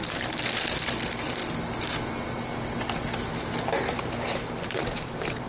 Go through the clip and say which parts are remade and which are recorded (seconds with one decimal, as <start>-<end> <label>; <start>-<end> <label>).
0.0-5.5 recorded